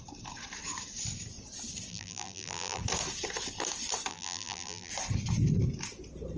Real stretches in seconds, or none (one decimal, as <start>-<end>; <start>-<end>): 0.0-1.9; 2.8-4.1; 4.9-6.4